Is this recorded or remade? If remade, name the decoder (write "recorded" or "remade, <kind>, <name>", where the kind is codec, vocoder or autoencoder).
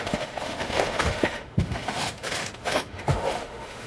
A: remade, autoencoder, DAC-VAE